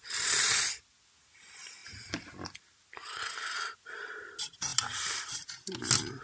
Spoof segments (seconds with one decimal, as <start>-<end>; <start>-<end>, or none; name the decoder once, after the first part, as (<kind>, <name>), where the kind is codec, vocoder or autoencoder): none